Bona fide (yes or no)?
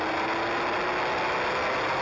yes